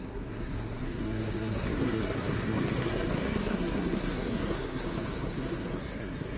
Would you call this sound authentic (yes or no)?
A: no